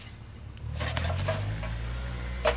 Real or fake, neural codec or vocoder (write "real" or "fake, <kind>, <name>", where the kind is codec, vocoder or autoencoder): real